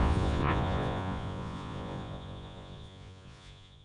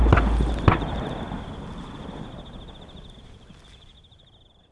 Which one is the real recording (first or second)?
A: second